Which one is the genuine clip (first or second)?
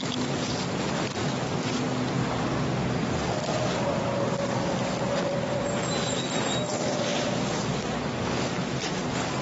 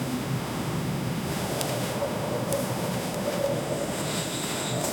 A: first